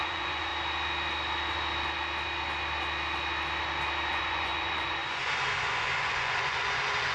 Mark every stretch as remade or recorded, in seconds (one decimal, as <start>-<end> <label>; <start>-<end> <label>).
0.0-0.5 remade; 0.5-4.1 recorded; 4.1-7.1 remade